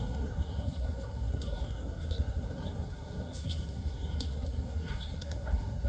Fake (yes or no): yes